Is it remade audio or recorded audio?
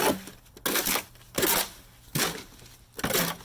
recorded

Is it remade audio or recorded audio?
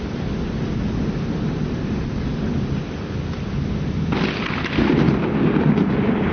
recorded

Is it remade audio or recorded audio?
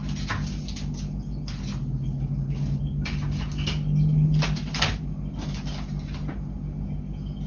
recorded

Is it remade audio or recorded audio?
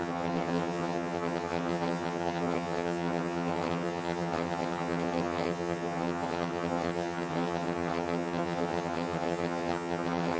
remade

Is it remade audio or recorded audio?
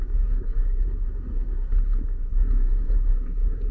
remade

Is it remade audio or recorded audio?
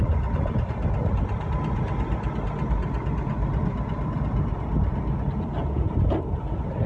recorded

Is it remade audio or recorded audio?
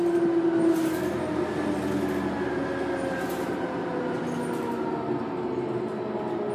recorded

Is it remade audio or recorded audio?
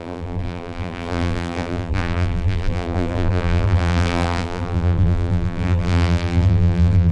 remade